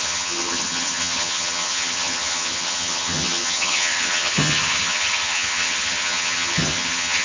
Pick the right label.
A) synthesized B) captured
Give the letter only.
A